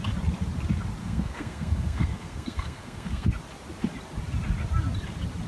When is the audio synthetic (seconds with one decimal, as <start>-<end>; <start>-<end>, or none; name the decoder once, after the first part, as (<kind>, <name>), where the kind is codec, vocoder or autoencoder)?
1.0-3.3 (codec, SNAC)